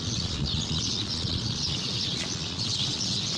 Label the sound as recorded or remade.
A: remade